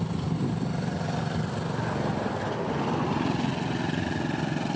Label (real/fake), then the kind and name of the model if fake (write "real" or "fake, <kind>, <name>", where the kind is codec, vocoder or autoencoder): real